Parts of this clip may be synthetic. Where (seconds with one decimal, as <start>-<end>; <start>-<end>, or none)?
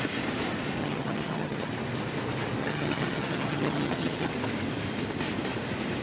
0.8-1.7; 2.6-4.3